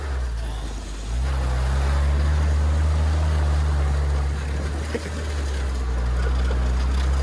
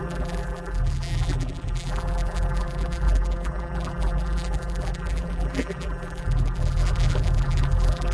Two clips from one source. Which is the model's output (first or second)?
second